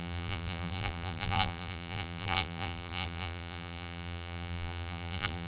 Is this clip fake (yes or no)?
yes